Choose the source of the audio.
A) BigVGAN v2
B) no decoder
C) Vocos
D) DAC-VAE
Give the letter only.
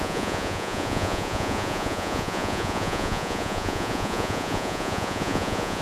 C